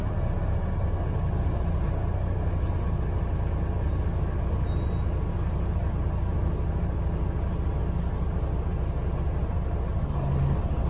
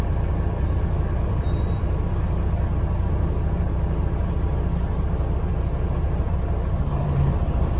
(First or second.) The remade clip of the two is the second